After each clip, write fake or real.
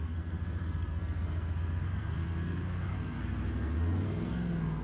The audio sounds fake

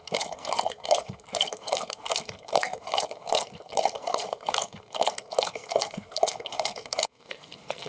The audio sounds fake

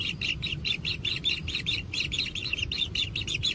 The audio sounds real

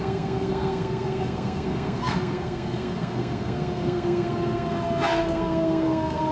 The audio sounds fake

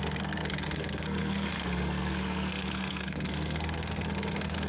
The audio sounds fake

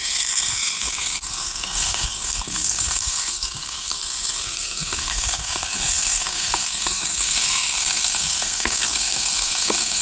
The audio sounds fake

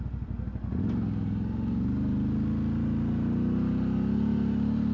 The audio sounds real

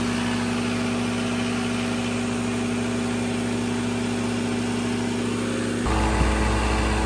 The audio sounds real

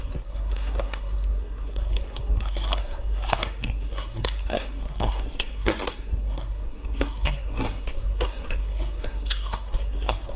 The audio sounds fake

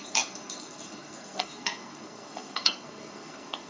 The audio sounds fake